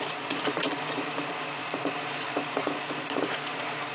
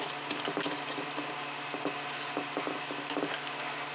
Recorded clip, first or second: second